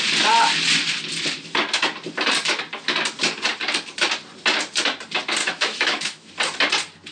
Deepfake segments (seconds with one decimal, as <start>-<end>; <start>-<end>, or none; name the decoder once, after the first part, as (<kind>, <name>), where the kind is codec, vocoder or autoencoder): 5.4-6.3 (autoencoder, DAC-VAE)